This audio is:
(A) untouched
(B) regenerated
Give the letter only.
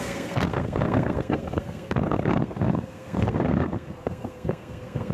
B